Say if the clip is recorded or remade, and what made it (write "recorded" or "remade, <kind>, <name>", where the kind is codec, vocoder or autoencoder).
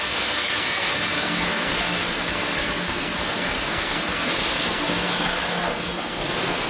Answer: remade, codec, SNAC